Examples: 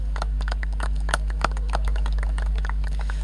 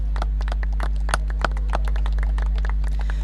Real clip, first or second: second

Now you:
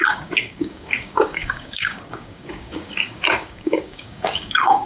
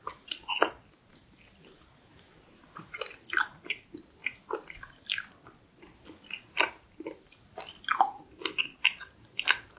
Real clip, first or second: second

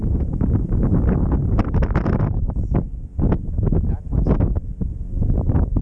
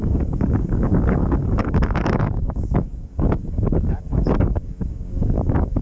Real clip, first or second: first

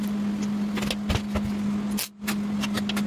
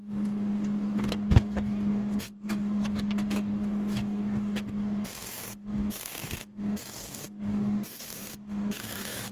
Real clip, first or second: first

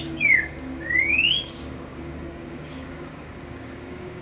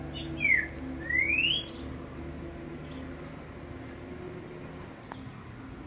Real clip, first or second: second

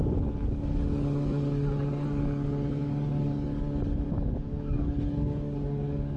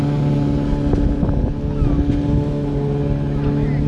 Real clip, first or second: second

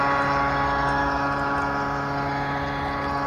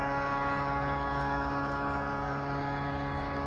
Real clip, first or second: first